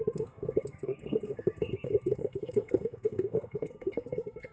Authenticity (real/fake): fake